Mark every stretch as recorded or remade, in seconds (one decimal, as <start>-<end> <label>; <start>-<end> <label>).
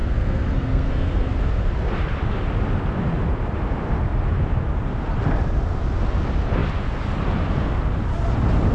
0.0-1.4 remade; 1.4-8.7 recorded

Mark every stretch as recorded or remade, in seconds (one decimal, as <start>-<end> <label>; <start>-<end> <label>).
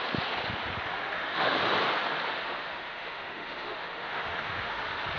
0.0-0.9 recorded; 0.9-1.6 remade; 1.6-2.3 recorded; 2.3-4.8 remade; 4.8-5.2 recorded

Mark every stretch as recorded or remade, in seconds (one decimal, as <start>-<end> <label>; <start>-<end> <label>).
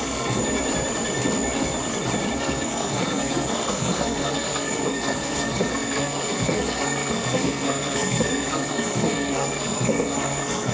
0.0-0.4 remade; 0.4-2.4 recorded; 2.4-10.7 remade